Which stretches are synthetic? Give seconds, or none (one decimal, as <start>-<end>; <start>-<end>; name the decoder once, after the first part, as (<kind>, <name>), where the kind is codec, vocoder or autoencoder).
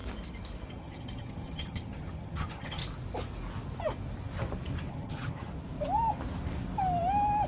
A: 0.7-2.8 (vocoder, HiFi-GAN); 4.9-5.5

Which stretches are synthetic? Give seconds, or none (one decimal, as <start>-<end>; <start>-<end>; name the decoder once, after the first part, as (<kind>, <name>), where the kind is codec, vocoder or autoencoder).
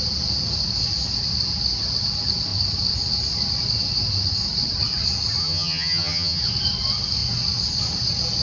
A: 5.4-6.4 (vocoder, HiFi-GAN)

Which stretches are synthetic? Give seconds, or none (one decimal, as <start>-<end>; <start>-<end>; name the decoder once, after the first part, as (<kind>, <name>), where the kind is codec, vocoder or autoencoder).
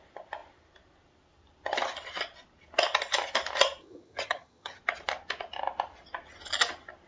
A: 3.8-4.8 (vocoder, HiFi-GAN)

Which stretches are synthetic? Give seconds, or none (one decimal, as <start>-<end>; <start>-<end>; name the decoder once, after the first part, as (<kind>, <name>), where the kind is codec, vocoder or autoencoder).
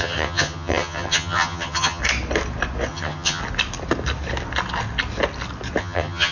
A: 0.0-2.0 (vocoder, HiFi-GAN); 2.9-3.4; 5.8-6.3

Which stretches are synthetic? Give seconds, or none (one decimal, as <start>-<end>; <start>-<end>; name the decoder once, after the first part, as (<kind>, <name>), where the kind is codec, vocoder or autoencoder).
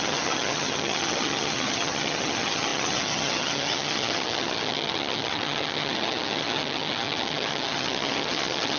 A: 0.0-8.8 (vocoder, HiFi-GAN)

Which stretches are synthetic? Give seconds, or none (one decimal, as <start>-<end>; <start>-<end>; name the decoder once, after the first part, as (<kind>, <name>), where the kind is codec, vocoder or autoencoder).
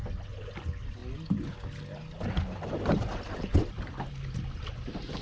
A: none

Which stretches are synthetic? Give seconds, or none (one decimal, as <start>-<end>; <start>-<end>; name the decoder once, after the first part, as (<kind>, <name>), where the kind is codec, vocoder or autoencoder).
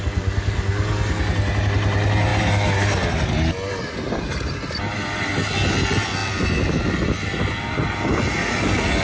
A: none